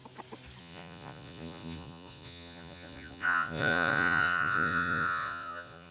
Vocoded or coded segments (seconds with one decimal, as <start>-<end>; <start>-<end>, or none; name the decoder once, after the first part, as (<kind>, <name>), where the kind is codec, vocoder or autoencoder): 0.6-5.9 (vocoder, Vocos)